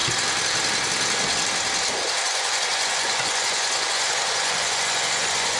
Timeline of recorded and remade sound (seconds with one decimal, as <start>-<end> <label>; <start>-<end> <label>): 0.0-1.9 recorded; 1.9-5.6 remade